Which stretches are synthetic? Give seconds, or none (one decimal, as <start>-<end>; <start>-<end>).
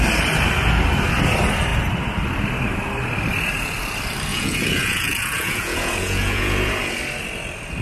4.3-6.9